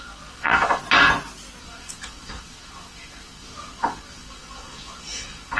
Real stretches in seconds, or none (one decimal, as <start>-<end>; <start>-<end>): 0.8-1.6